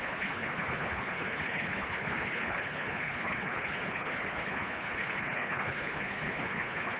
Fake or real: fake